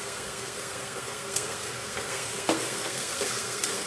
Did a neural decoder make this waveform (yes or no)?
yes